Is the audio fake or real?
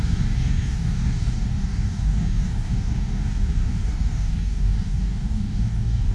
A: fake